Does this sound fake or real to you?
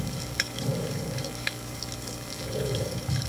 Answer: fake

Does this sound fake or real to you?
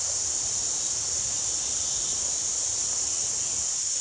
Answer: real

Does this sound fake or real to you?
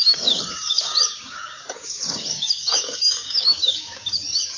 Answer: fake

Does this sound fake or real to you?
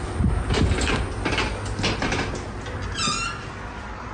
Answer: real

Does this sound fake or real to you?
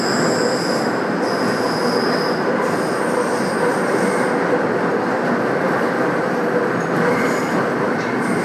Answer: real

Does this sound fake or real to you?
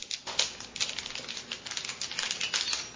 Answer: real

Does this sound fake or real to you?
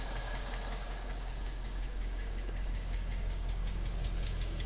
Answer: fake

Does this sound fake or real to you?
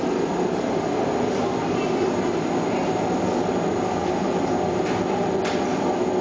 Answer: real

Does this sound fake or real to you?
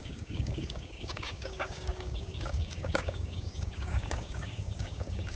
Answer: fake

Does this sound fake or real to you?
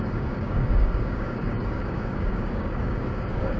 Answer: fake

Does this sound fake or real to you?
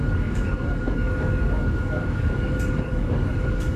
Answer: fake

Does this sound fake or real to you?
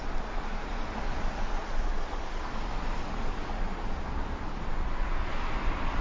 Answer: real